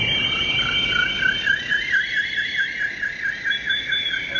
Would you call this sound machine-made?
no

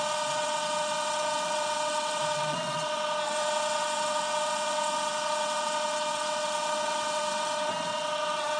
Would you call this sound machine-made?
yes